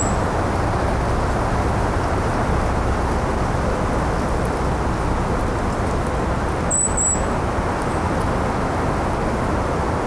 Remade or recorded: recorded